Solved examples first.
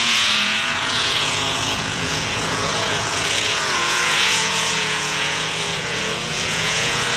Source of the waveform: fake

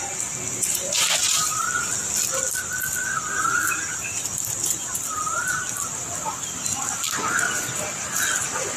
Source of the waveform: real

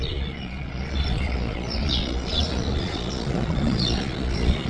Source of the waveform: fake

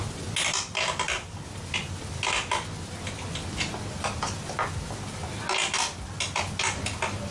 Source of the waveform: real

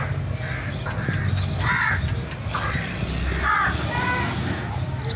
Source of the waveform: real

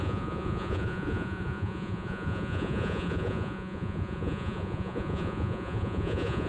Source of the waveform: fake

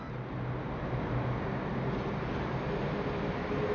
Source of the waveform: real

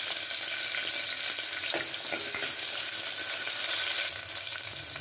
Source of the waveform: real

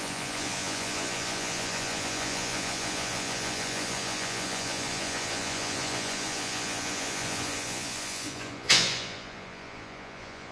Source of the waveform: fake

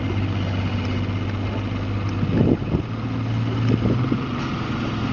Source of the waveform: real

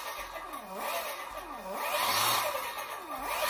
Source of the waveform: real